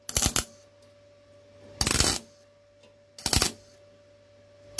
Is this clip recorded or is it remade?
recorded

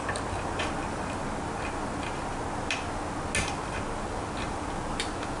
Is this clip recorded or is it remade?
recorded